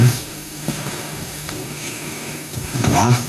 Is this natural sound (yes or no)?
no